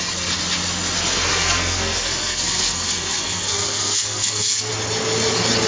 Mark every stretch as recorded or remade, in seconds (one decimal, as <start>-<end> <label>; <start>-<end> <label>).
0.0-1.3 recorded; 1.3-4.7 remade; 4.7-5.7 recorded